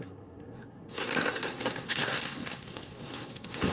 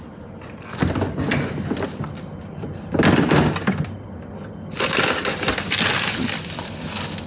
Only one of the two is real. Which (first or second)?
second